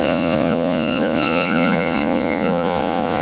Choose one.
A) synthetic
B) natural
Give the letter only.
A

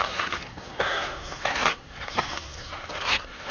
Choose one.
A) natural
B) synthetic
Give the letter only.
B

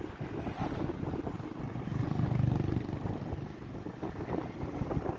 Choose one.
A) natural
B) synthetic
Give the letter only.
A